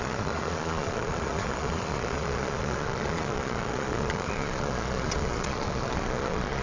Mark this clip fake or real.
fake